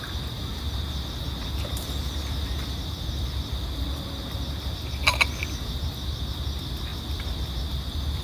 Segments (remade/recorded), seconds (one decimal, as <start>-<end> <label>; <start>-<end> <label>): 0.0-8.2 recorded